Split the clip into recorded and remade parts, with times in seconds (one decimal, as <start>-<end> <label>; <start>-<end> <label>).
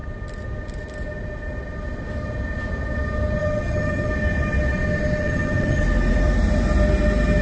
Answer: 0.0-3.4 recorded; 3.4-4.1 remade; 4.1-5.2 recorded; 5.2-5.8 remade; 5.8-7.4 recorded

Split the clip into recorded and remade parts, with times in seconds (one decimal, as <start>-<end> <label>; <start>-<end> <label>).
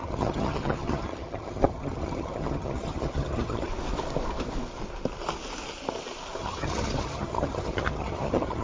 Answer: 0.0-3.7 remade; 3.7-6.4 recorded; 6.4-8.6 remade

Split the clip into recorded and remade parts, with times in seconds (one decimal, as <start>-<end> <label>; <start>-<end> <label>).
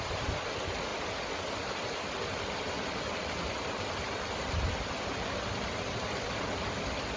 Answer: 0.0-7.2 recorded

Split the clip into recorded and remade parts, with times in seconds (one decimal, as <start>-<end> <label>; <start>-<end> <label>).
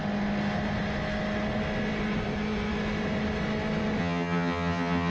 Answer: 0.0-4.0 recorded; 4.0-5.1 remade